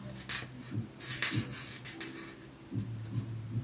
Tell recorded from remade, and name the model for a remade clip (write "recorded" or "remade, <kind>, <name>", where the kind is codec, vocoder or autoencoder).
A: recorded